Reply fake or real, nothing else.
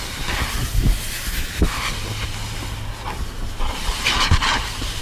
real